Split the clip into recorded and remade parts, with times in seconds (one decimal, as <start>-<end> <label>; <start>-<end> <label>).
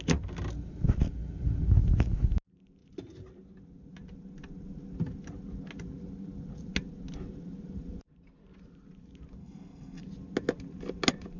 0.0-9.4 recorded; 9.4-10.0 remade; 10.0-11.4 recorded